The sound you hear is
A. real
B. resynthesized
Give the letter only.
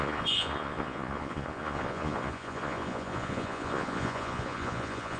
B